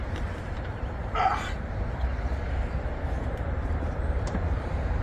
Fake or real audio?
fake